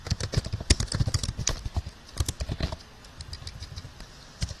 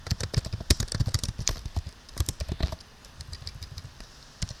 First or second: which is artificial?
second